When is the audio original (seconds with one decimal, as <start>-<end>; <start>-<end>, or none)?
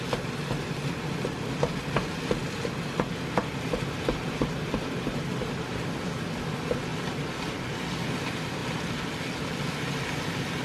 0.0-10.6